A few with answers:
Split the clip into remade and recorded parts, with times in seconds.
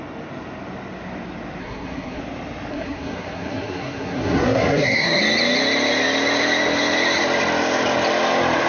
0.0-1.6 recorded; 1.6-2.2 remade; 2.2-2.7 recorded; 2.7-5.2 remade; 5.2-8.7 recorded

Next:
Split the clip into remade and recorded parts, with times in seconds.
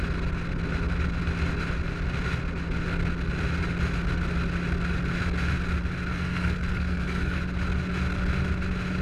0.0-6.1 recorded; 6.1-7.4 remade; 7.4-9.0 recorded